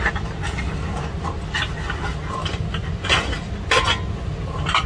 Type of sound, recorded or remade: recorded